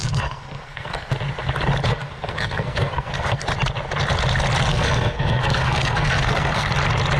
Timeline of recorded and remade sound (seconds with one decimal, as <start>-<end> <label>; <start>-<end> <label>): 0.0-1.1 remade; 1.1-1.9 recorded; 1.9-3.4 remade; 3.4-4.7 recorded; 4.7-6.7 remade; 6.7-7.2 recorded